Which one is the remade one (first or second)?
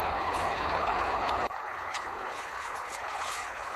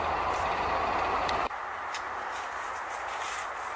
first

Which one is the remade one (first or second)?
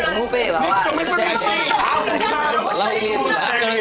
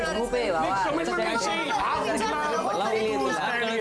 first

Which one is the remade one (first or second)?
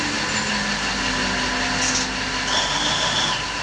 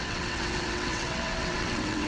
second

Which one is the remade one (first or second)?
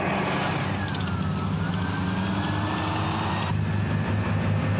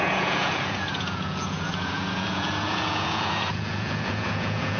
second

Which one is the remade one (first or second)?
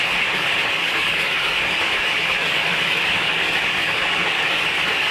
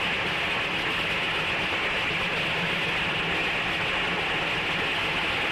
first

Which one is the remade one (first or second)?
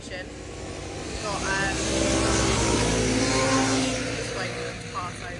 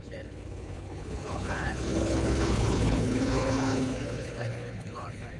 second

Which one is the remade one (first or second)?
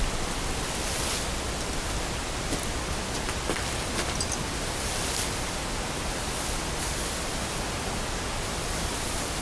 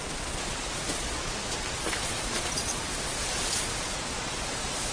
second